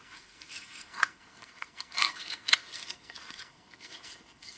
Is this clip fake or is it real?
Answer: fake